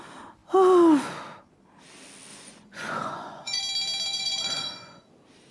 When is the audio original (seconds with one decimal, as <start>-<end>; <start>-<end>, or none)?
0.0-2.3; 3.6-4.1; 5.0-5.5